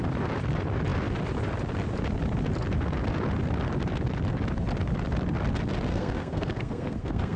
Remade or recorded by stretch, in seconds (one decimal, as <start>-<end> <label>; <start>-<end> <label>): 0.0-5.9 recorded; 5.9-7.4 remade